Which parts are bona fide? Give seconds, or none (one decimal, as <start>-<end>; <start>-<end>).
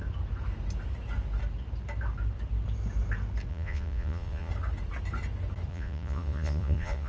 0.0-3.5; 4.5-5.7